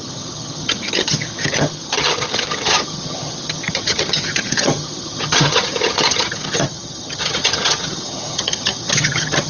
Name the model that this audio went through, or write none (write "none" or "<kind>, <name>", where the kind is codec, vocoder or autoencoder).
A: vocoder, HiFi-GAN